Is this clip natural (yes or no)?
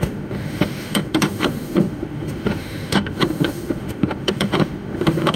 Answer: no